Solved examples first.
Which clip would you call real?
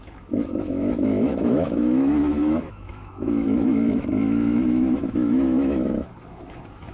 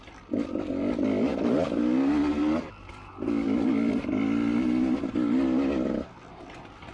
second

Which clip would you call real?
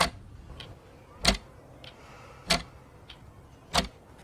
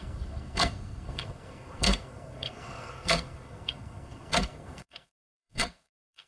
first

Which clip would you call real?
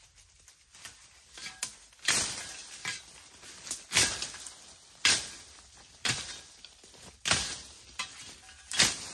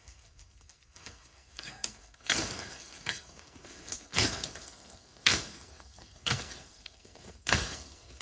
first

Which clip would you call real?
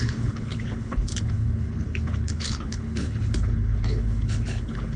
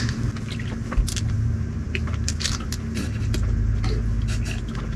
second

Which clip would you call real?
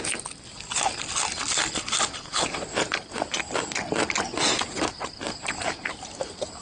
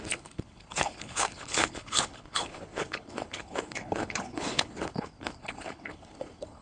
first